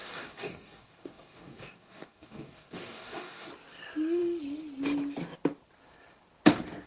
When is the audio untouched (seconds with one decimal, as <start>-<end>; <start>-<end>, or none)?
3.5-6.9